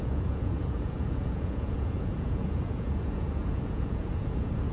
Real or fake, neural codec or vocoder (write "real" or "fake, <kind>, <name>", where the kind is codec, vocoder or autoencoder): fake, vocoder, Vocos